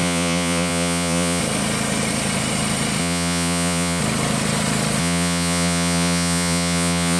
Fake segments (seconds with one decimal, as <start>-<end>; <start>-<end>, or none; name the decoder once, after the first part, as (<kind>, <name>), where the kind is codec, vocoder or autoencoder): 0.0-1.4 (vocoder, Vocos); 3.0-4.0; 5.0-7.2